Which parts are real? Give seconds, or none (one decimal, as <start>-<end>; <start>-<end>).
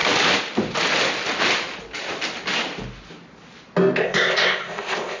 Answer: 0.0-4.0